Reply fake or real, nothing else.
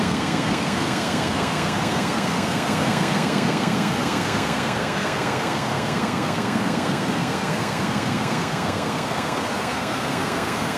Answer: fake